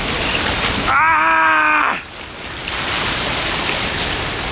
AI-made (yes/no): no